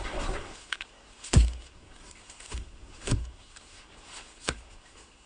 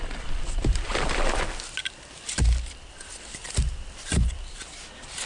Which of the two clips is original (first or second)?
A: second